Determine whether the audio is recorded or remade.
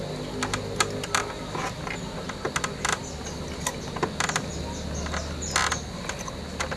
recorded